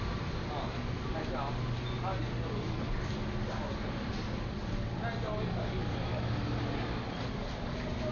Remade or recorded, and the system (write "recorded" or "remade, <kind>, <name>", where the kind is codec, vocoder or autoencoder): recorded